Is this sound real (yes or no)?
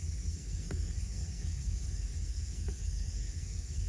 no